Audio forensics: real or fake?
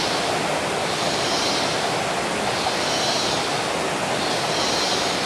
real